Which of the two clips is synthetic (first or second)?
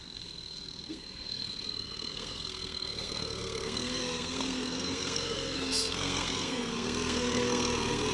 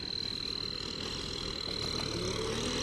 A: first